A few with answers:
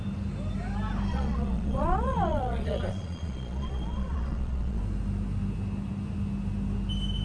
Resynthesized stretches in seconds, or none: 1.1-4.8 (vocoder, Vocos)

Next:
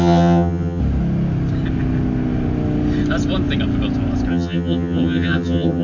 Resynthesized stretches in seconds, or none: 0.0-0.8 (vocoder, HiFi-GAN); 4.3-5.8

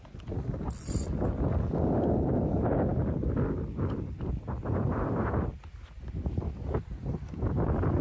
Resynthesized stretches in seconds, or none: none

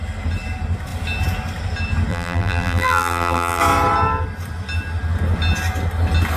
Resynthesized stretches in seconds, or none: 2.1-3.6 (vocoder, BigVGAN v2)

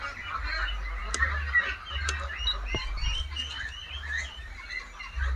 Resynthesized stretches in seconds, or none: none